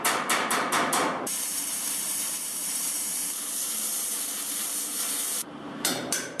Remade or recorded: remade